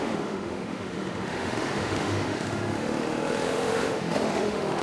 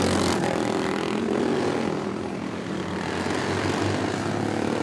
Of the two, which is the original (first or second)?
second